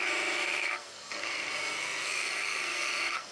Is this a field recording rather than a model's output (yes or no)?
no